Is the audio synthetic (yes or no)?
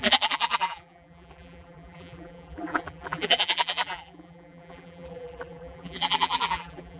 yes